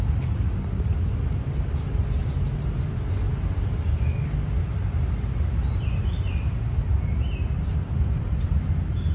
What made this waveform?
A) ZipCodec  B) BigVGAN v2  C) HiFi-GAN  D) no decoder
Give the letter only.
D